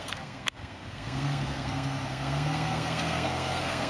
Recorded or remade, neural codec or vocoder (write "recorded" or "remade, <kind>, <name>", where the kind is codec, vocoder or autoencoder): remade, codec, SNAC